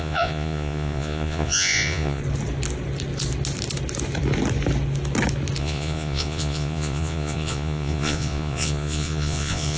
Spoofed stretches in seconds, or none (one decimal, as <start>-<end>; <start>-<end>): 0.0-2.2; 5.6-9.8